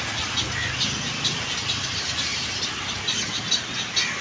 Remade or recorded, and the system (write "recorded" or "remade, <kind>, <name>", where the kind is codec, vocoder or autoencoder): recorded